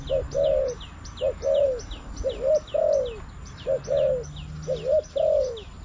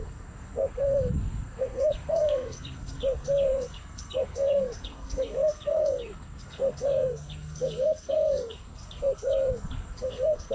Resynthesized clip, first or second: second